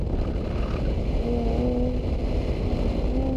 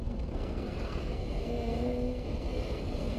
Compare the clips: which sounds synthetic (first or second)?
second